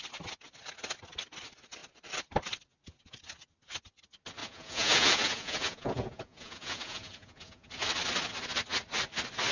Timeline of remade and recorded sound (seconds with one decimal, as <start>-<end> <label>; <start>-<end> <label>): 0.0-4.4 recorded; 4.4-7.7 remade; 7.7-9.5 recorded